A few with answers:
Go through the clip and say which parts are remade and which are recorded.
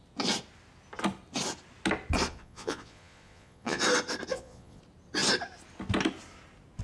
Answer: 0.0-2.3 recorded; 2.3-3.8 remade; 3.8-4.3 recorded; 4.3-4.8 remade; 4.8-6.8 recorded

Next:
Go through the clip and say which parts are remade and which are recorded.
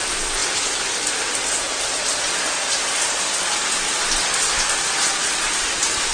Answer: 0.0-6.1 recorded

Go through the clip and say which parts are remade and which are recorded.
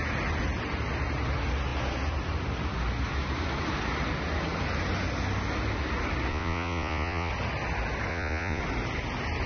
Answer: 0.0-6.3 recorded; 6.3-7.3 remade; 7.3-8.1 recorded; 8.1-8.6 remade; 8.6-9.5 recorded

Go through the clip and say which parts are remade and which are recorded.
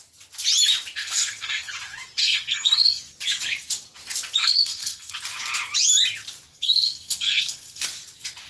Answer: 0.0-1.0 recorded; 1.0-1.7 remade; 1.7-2.2 recorded; 2.2-3.0 remade; 3.0-4.4 recorded; 4.4-5.1 remade; 5.1-6.5 recorded; 6.5-7.8 remade; 7.8-8.5 recorded